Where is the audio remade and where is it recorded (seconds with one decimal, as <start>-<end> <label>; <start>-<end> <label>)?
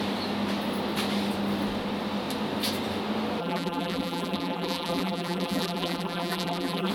0.0-3.4 recorded; 3.4-6.9 remade